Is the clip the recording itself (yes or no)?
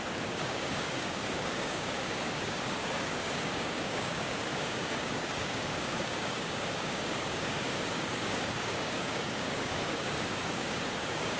no